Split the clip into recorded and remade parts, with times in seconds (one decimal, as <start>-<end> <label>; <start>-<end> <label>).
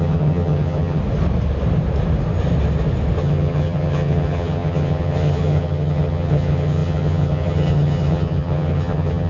0.0-1.0 remade; 1.0-3.2 recorded; 3.2-9.3 remade